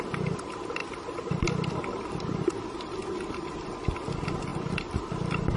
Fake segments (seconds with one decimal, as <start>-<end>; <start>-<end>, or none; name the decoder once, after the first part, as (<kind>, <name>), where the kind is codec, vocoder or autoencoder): 4.5-5.6 (vocoder, BigVGAN v2)